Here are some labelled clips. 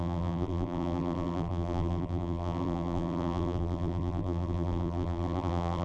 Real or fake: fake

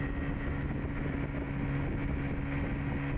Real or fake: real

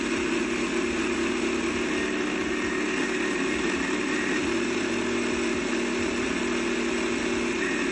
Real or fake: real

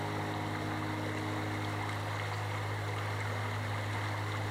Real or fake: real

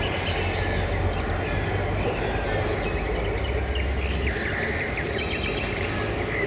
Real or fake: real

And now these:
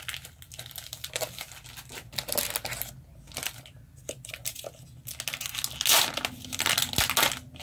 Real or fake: real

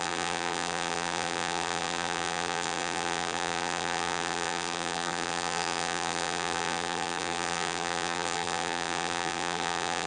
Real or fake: fake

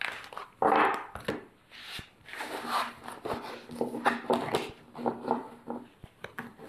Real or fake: real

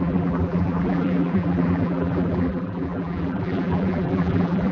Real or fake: fake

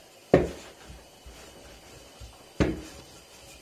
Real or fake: real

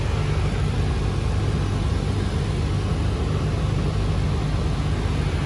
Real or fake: real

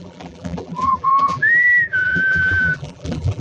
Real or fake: fake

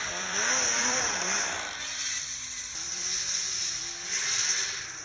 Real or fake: fake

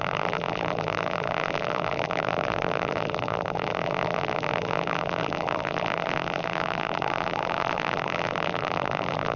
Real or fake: fake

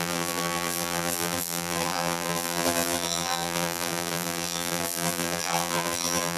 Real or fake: fake